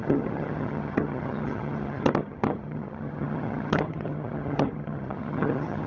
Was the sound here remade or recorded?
remade